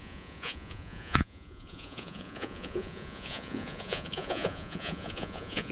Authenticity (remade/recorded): remade